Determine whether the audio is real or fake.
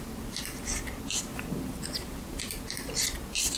real